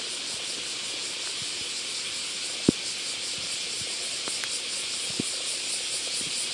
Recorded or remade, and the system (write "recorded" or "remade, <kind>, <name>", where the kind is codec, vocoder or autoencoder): recorded